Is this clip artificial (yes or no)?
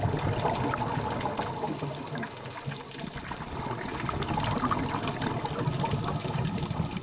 no